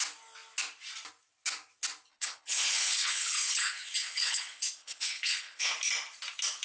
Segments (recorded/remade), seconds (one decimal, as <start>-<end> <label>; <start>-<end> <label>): 0.0-2.1 recorded; 2.1-5.7 remade; 5.7-6.6 recorded